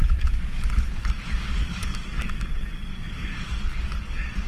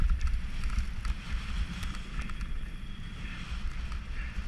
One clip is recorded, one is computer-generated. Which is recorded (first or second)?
second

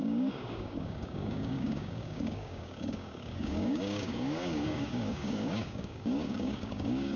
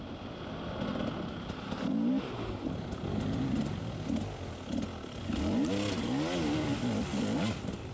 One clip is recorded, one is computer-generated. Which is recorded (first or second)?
second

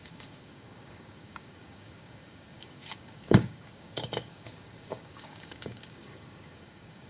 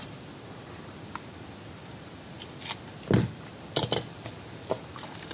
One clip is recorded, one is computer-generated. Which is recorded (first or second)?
second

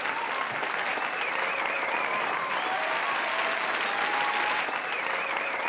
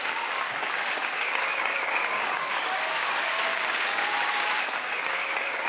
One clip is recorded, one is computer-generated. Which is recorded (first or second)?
first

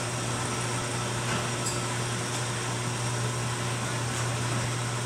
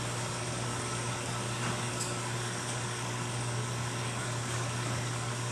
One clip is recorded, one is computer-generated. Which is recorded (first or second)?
first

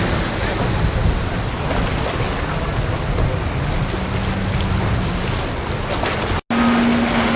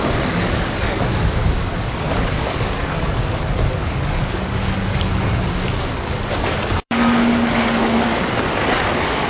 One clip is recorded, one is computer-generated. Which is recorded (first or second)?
first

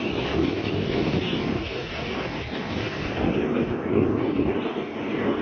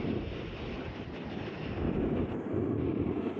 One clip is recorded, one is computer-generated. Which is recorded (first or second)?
second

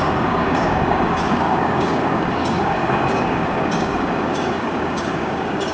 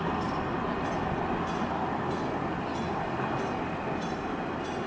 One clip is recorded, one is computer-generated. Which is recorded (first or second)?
second